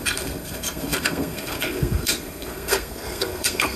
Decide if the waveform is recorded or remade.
remade